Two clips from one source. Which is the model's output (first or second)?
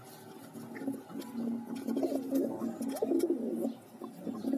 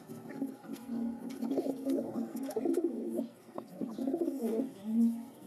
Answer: second